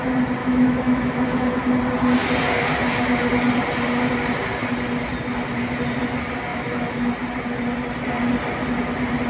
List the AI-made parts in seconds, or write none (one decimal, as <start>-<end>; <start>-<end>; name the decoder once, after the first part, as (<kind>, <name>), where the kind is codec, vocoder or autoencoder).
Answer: 0.4-1.7 (autoencoder, DAC-VAE); 6.5-7.1